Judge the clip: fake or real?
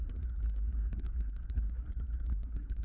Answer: fake